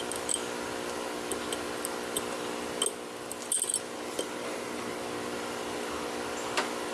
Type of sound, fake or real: real